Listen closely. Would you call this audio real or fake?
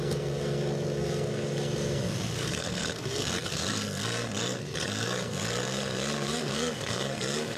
fake